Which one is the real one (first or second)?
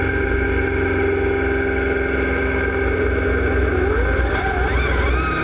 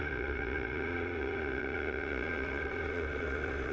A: first